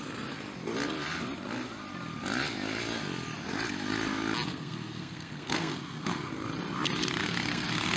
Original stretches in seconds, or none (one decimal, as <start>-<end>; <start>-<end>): 0.0-4.5; 6.3-7.2